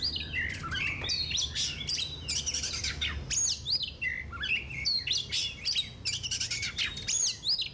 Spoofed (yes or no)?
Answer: no